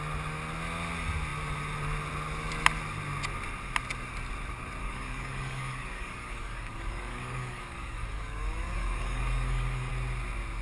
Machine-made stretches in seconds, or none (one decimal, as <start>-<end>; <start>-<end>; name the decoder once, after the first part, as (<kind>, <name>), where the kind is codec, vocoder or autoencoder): 4.8-9.9 (codec, DAC)